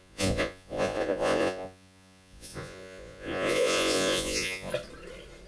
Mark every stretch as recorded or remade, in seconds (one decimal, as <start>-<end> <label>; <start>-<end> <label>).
0.0-4.7 remade; 4.7-5.5 recorded

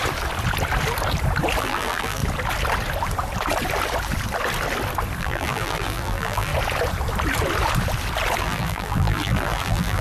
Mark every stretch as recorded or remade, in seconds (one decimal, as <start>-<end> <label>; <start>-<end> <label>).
0.0-1.6 recorded; 1.6-2.2 remade; 2.2-5.2 recorded; 5.2-6.5 remade; 6.5-8.4 recorded; 8.4-10.0 remade

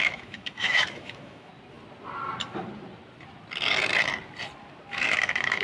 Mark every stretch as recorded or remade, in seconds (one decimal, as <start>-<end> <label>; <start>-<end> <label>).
0.0-1.5 remade; 1.5-4.9 recorded; 4.9-5.6 remade

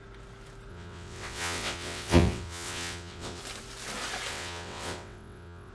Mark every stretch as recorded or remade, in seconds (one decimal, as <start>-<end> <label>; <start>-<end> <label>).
0.0-0.7 recorded; 0.7-3.4 remade; 3.4-4.3 recorded; 4.3-5.7 remade

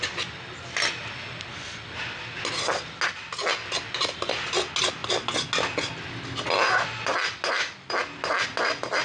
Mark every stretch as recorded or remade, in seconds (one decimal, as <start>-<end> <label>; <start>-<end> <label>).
0.0-9.0 recorded

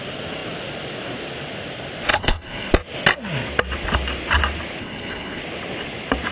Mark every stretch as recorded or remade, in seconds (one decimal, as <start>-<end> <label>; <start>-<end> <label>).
0.0-2.1 recorded; 2.1-2.7 remade; 2.7-4.8 recorded; 4.8-5.4 remade; 5.4-6.3 recorded

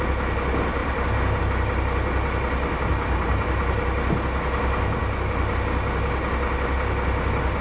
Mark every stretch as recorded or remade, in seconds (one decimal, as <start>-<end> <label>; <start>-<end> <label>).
0.0-0.8 recorded; 0.8-1.4 remade; 1.4-7.6 recorded